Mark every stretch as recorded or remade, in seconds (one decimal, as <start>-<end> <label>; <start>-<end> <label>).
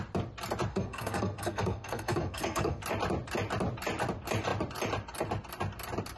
0.0-0.7 recorded; 0.7-2.8 remade; 2.8-6.2 recorded